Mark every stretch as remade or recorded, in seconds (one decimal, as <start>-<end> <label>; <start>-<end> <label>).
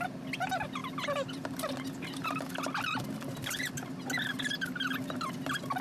0.0-5.8 recorded